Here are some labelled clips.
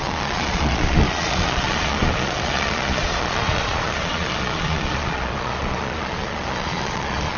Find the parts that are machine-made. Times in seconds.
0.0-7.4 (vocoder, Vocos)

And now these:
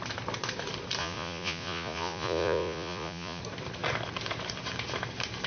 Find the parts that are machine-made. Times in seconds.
1.0-3.4 (vocoder, Vocos)

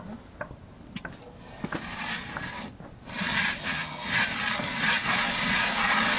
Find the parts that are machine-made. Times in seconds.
3.6-4.1 (vocoder, HiFi-GAN)

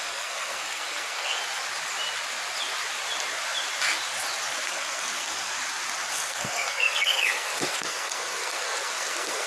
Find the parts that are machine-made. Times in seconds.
0.0-1.4 (codec, SNAC); 4.7-5.6; 6.1-9.5

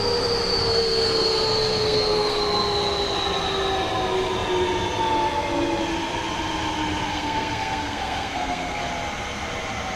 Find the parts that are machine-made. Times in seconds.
0.6-2.4 (codec, SNAC); 7.1-8.9